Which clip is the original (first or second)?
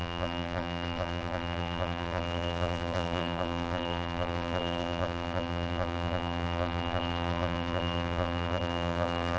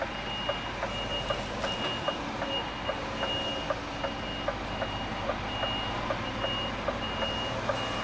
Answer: second